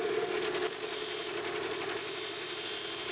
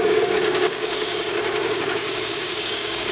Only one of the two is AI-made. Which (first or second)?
second